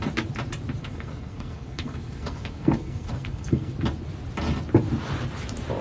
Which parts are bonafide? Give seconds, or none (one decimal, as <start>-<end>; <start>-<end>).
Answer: 0.0-0.8; 3.7-5.8